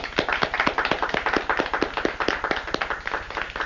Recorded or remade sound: recorded